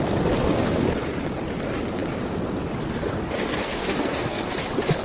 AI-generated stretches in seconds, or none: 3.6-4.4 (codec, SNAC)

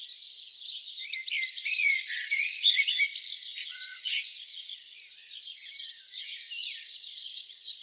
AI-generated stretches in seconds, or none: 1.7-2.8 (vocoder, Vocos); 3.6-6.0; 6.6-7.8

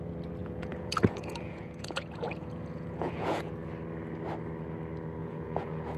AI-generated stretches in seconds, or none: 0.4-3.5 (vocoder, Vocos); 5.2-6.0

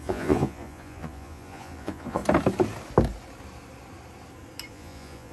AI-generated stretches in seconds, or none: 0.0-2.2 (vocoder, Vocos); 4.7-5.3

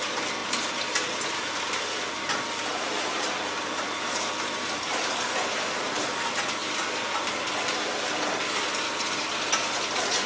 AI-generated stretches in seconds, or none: 0.4-1.4 (vocoder, BigVGAN v2); 2.7-6.0

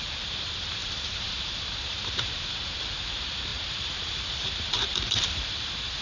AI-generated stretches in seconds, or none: 0.0-6.0 (vocoder, BigVGAN v2)

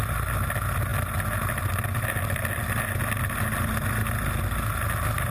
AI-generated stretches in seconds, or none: none